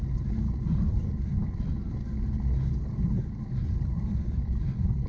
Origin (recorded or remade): recorded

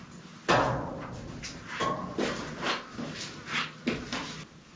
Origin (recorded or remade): recorded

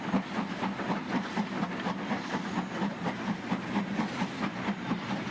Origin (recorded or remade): recorded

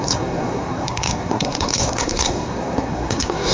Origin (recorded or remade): remade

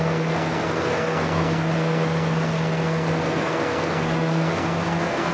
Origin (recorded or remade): remade